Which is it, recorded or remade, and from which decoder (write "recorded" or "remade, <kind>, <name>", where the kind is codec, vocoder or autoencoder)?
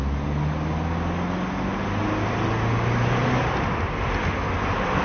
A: recorded